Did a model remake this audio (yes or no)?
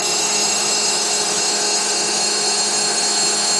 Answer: yes